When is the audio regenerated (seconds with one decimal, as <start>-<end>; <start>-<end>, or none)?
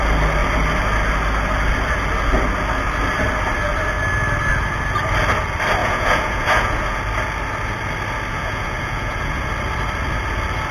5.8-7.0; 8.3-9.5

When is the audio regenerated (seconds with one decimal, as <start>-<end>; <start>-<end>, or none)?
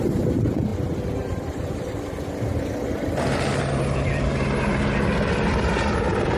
0.7-3.3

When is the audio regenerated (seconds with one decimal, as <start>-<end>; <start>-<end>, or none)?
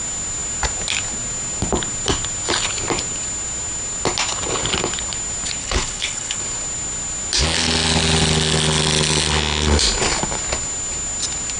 5.6-6.4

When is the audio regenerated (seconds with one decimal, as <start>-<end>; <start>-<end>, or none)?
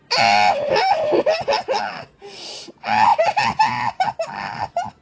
none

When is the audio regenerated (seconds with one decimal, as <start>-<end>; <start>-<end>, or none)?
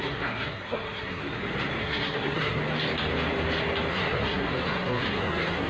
0.0-1.2; 1.8-2.6; 3.9-5.7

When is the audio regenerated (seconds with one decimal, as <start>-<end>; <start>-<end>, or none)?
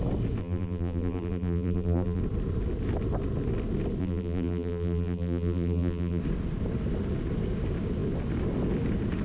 0.4-2.2; 4.0-6.2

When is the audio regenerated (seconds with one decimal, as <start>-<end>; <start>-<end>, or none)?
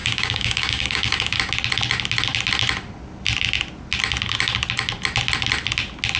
0.0-1.4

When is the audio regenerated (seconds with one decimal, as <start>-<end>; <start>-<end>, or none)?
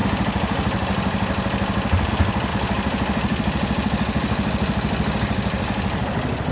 none